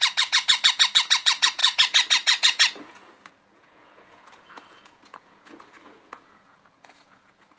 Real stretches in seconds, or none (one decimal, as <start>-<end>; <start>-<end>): none